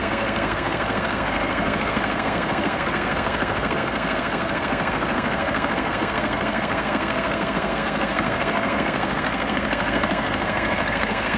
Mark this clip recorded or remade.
remade